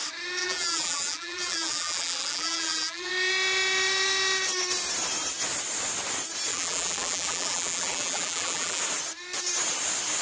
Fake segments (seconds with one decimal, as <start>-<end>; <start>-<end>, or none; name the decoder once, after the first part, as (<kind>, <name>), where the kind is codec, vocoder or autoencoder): 0.4-3.1 (vocoder, BigVGAN v2); 6.5-8.8